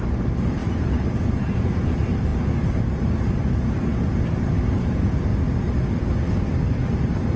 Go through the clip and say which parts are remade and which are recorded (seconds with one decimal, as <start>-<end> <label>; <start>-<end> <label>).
0.0-5.3 remade; 5.3-7.4 recorded